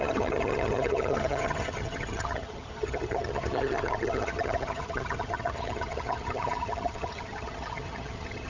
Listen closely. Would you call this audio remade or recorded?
remade